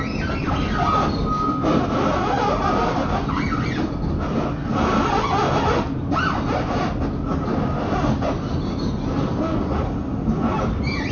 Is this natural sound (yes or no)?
yes